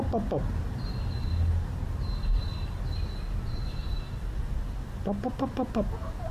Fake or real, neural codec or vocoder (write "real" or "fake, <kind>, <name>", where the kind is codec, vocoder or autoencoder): real